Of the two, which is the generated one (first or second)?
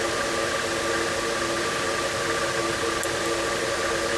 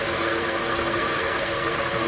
second